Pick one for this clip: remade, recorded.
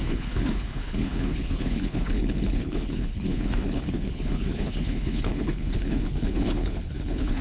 remade